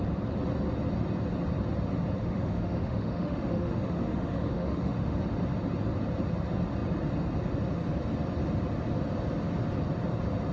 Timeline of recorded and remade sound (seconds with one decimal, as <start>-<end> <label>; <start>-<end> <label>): 0.0-2.2 recorded; 2.2-5.2 remade; 5.2-10.5 recorded